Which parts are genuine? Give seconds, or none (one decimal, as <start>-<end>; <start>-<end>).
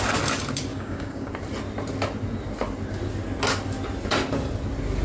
0.0-0.7; 1.3-5.0